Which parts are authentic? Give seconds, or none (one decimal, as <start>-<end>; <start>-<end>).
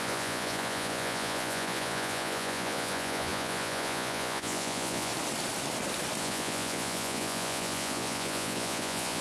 5.1-6.2